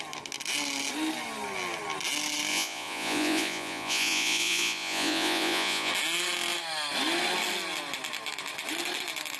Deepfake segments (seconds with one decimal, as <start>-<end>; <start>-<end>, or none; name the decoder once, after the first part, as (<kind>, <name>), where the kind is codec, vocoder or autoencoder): 2.5-5.9 (vocoder, Vocos)